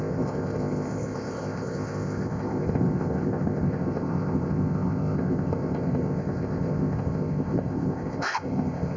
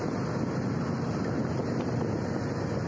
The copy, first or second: first